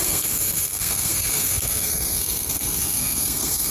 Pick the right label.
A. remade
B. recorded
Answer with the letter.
A